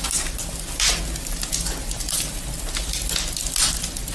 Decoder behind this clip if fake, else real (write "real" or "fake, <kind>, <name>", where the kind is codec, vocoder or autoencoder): real